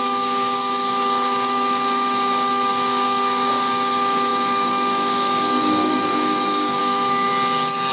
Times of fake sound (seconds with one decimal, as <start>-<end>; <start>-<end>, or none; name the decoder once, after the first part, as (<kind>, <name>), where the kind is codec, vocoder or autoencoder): 0.0-7.3 (codec, DAC)